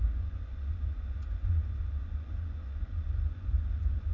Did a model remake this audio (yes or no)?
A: yes